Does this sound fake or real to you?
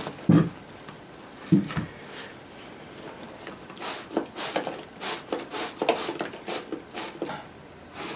real